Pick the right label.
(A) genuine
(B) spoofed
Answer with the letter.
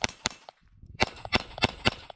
B